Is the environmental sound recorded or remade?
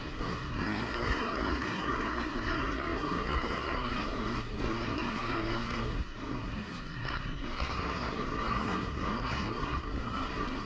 remade